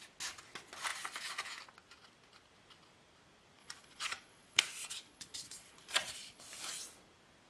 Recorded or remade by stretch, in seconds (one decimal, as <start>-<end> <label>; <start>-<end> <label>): 0.0-3.6 recorded; 3.6-6.4 remade; 6.4-7.5 recorded